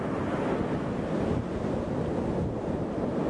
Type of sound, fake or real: real